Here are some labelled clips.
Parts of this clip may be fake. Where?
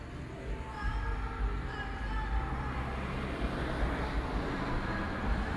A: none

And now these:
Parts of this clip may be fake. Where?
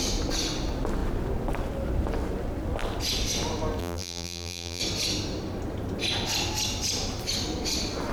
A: 3.8-4.8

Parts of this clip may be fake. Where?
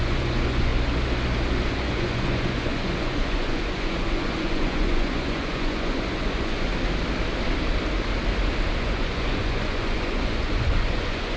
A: 0.0-0.7; 1.7-6.7; 8.8-11.4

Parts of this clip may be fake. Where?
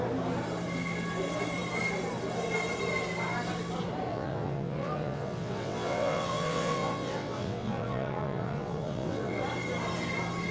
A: 4.1-9.4